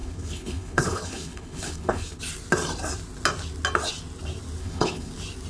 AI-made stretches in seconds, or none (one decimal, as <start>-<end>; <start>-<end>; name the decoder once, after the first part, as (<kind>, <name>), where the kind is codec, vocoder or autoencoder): 0.0-2.2 (codec, HILCodec); 4.6-5.1